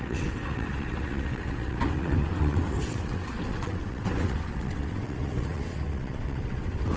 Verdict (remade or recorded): remade